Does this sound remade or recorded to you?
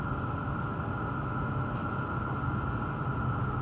recorded